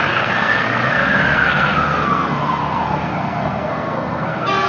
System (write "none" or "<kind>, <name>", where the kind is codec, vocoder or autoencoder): codec, SNAC